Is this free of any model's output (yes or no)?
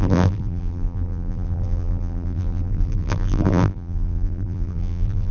no